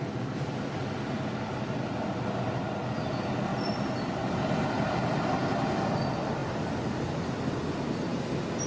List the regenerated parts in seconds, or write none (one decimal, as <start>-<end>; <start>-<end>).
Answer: none